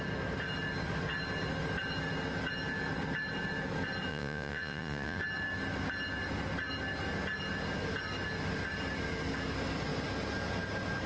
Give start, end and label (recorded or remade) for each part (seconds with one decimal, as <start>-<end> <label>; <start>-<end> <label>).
0.0-4.1 recorded; 4.1-5.2 remade; 5.2-11.1 recorded